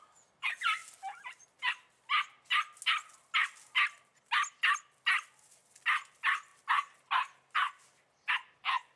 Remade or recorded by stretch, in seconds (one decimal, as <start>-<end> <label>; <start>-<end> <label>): 0.0-9.0 recorded

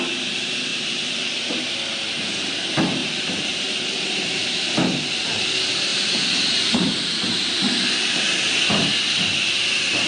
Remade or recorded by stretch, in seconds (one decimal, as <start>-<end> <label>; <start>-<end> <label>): 0.0-0.7 recorded; 0.7-1.7 remade; 1.7-3.0 recorded; 3.0-5.4 remade; 5.4-5.9 recorded; 5.9-8.3 remade; 8.3-10.1 recorded

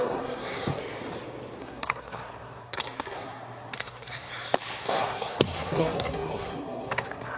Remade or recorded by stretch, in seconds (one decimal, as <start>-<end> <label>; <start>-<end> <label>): 0.0-0.8 remade; 0.8-1.6 recorded; 1.6-4.3 remade; 4.3-4.8 recorded; 4.8-7.4 remade

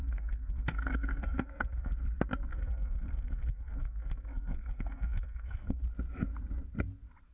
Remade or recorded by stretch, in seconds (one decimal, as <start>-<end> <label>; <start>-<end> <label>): 0.0-1.9 remade; 1.9-2.5 recorded; 2.5-5.8 remade; 5.8-7.3 recorded